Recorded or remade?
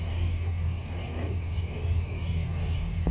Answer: remade